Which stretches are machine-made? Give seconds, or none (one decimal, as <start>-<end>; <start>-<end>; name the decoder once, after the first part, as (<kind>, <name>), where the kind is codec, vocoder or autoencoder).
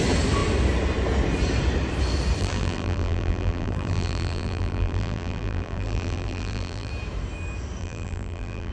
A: 2.4-6.9 (vocoder, BigVGAN v2); 7.8-8.7